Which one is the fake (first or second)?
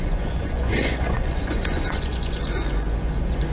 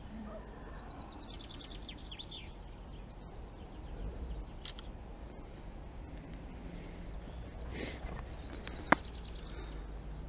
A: first